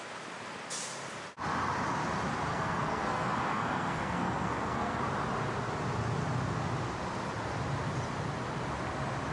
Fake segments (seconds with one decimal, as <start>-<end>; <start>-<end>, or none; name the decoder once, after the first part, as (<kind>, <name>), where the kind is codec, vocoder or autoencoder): 2.5-5.0 (codec, SNAC)